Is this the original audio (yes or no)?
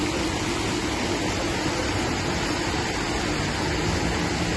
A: yes